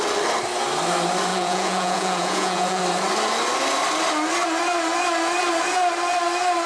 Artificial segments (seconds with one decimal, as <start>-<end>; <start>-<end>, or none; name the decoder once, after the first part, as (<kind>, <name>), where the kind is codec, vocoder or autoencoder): 1.3-2.8 (vocoder, Vocos)